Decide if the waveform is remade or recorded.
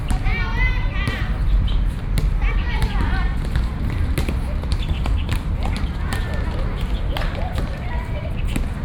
remade